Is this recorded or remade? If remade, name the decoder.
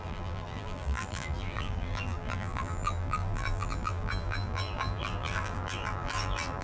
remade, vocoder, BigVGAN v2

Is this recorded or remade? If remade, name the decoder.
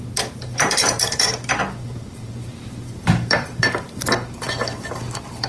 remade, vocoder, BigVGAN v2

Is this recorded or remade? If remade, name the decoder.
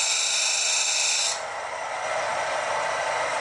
recorded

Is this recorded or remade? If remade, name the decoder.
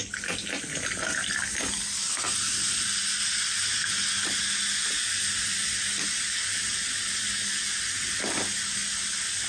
recorded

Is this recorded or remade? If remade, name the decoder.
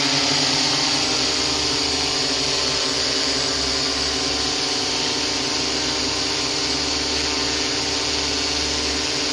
recorded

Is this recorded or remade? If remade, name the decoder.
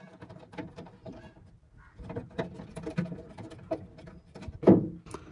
remade, vocoder, BigVGAN v2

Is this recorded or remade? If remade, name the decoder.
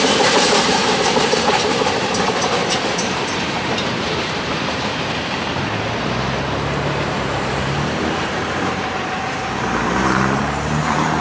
remade, vocoder, BigVGAN v2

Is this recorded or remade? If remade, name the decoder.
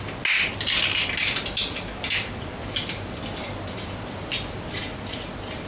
recorded